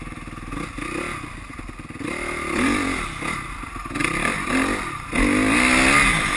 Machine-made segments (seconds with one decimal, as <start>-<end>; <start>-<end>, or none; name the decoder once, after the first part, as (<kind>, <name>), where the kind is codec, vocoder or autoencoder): none